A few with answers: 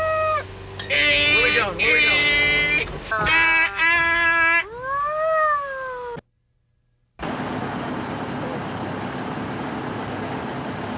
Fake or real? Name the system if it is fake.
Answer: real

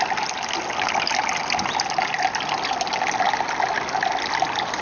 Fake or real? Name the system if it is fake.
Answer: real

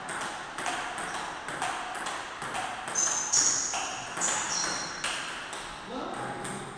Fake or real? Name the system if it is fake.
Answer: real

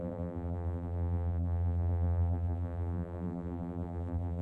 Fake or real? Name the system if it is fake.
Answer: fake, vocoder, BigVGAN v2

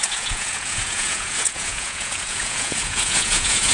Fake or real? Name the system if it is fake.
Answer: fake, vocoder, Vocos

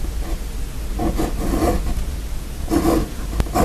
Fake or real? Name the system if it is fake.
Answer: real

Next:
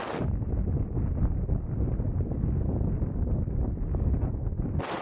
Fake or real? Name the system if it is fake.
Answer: real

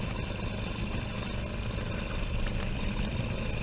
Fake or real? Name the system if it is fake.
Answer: real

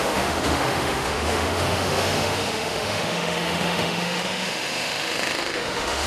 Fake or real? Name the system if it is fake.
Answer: fake, autoencoder, DAC-VAE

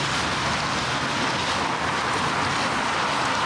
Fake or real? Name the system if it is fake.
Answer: real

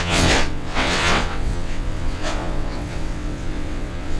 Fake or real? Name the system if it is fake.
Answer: fake, vocoder, WaveNeXt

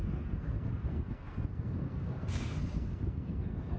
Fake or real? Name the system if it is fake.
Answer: fake, codec, SNAC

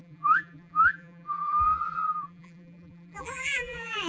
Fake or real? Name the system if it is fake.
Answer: fake, vocoder, BigVGAN v2